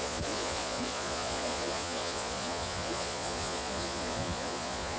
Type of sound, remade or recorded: remade